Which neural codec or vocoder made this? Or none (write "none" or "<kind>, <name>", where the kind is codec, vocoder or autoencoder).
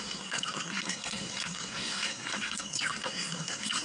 codec, SNAC